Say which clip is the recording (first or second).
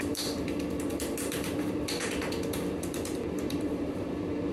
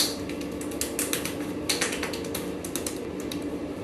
second